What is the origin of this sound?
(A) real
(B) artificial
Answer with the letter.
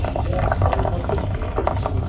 A